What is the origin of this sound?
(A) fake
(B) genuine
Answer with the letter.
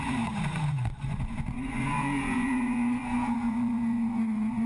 A